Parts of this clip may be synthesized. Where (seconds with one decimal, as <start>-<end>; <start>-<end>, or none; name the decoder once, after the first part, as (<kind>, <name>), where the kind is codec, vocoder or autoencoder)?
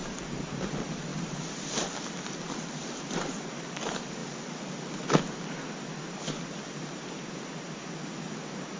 0.0-0.6 (vocoder, BigVGAN v2); 1.1-1.7